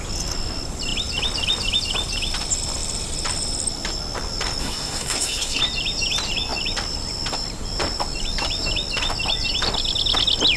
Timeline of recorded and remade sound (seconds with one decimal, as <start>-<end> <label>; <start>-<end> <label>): 0.0-4.6 recorded; 4.6-5.6 remade; 5.6-10.6 recorded